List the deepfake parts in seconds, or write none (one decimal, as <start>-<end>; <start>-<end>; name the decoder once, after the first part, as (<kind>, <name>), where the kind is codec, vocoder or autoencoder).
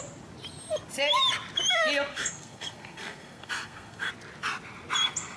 2.1-4.1 (codec, SNAC)